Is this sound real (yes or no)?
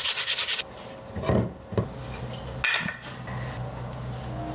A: yes